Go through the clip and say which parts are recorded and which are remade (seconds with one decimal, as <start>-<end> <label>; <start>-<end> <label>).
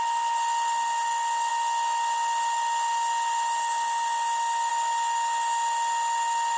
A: 0.0-6.6 recorded